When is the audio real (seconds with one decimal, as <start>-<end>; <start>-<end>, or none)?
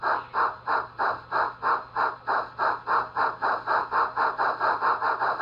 0.0-5.4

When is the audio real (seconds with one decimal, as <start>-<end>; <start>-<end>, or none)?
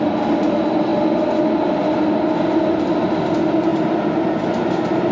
0.0-5.1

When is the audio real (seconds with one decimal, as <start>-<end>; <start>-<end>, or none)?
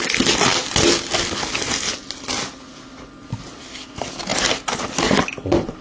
0.0-5.8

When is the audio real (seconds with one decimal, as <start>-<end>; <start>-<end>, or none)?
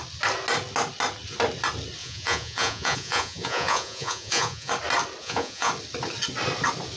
0.0-2.0; 4.7-5.2; 5.7-7.0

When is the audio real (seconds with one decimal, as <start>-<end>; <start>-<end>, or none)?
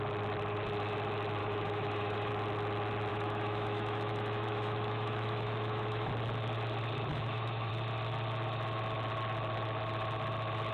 0.0-1.4; 2.3-3.1; 6.1-7.1; 7.7-10.7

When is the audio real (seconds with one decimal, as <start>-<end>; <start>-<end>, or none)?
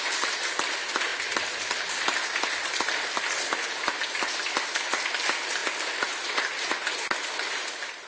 0.0-8.1